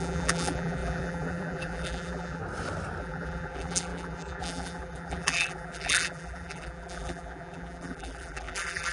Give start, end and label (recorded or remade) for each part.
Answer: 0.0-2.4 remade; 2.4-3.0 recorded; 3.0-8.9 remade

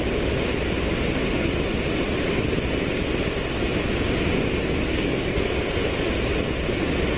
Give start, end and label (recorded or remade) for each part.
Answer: 0.0-4.9 recorded; 4.9-5.4 remade; 5.4-7.2 recorded

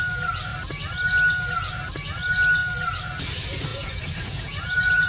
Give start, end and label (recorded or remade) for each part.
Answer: 0.0-3.7 recorded; 3.7-5.1 remade

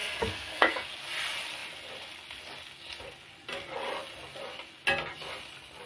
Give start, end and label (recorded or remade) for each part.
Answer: 0.0-0.9 remade; 0.9-5.9 recorded

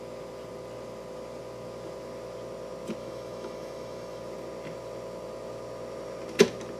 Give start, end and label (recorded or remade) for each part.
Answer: 0.0-3.0 recorded; 3.0-4.2 remade; 4.2-6.8 recorded